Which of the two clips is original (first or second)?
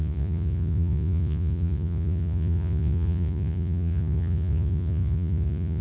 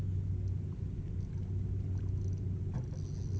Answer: second